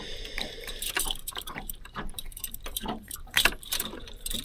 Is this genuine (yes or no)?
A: no